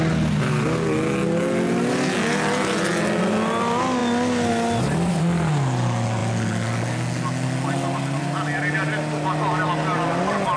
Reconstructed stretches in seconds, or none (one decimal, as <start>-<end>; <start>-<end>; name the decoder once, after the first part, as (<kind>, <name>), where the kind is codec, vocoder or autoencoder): none